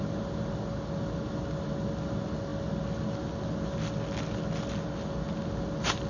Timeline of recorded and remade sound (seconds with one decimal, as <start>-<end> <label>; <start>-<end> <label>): 0.0-6.1 recorded